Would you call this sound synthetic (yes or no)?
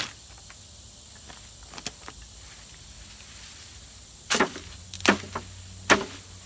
no